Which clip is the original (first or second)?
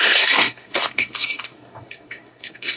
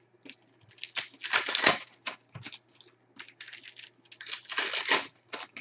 second